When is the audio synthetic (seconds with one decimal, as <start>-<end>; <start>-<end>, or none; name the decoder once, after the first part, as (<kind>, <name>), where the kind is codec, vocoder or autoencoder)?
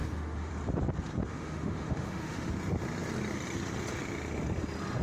0.0-0.5 (autoencoder, DAC-VAE); 1.3-2.5